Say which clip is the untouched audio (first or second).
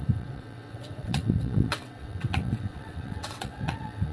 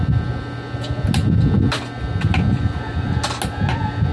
second